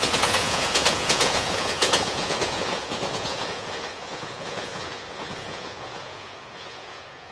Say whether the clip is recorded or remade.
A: remade